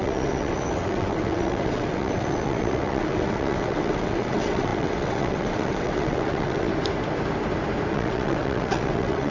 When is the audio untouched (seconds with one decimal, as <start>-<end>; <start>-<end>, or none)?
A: 6.7-7.9